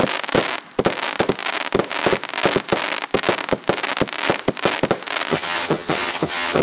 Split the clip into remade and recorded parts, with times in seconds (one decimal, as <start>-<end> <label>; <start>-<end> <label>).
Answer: 0.0-5.3 recorded; 5.3-6.6 remade